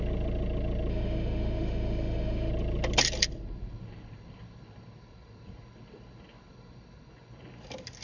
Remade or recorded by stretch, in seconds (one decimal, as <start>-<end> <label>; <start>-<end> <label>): 0.0-0.9 recorded; 0.9-2.5 remade; 2.5-8.0 recorded